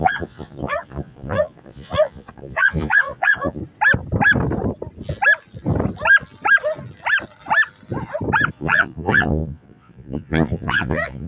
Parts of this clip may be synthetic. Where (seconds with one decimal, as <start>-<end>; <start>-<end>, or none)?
0.0-3.6; 8.5-11.3